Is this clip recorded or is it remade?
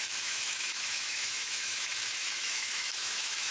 remade